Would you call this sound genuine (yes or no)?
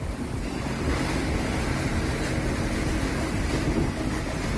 yes